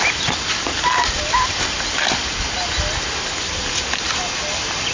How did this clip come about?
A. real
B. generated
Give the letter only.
A